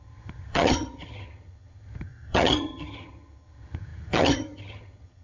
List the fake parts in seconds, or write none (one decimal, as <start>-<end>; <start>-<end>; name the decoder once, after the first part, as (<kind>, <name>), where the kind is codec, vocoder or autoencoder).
0.0-5.2 (vocoder, HiFi-GAN)